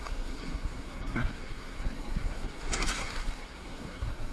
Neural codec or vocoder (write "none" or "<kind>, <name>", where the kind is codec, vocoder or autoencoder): codec, SNAC